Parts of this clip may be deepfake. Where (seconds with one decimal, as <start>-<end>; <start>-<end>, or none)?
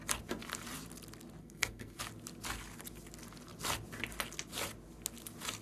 1.4-2.0